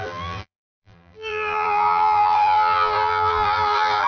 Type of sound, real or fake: fake